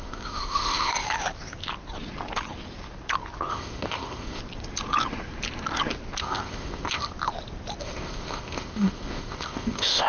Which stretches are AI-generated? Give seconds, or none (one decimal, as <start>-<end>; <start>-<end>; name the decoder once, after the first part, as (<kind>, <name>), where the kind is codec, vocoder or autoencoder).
0.0-0.9 (codec, ZipCodec); 3.5-4.4; 6.2-7.1; 7.8-10.1

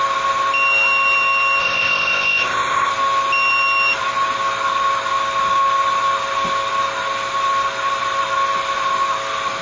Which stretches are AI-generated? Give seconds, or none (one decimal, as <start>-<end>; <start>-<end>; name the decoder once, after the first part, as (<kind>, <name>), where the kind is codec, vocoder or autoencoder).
1.6-2.9 (codec, ZipCodec)

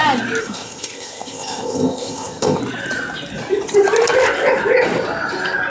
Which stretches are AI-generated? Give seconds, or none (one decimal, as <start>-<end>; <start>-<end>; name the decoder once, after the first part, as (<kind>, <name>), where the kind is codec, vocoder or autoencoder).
0.4-2.6 (codec, ZipCodec)

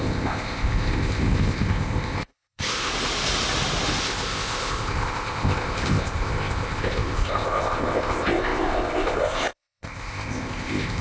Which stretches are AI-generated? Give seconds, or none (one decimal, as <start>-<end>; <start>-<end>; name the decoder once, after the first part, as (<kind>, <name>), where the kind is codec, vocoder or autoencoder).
0.0-2.9 (codec, ZipCodec); 4.0-11.0

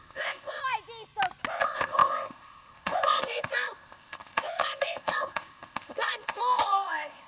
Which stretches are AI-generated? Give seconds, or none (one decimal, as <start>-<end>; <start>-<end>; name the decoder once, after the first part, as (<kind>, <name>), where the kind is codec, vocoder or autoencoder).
0.0-0.6 (codec, ZipCodec); 1.5-7.3

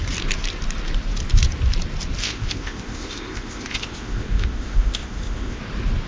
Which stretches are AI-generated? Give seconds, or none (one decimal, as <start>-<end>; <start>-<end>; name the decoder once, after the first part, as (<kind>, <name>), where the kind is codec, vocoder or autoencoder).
2.2-5.6 (codec, ZipCodec)